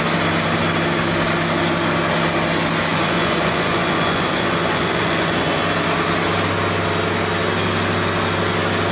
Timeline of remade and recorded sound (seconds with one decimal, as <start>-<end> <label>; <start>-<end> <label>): 0.0-2.9 recorded; 2.9-5.6 remade; 5.6-8.9 recorded